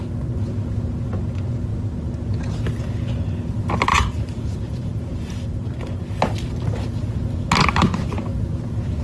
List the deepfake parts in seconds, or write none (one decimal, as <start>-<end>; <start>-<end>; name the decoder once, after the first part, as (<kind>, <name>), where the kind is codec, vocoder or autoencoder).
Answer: 3.9-6.2 (vocoder, BigVGAN v2)